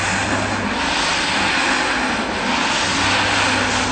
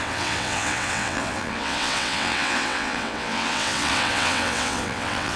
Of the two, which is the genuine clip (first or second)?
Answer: first